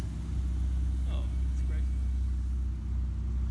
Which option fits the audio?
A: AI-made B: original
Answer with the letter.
B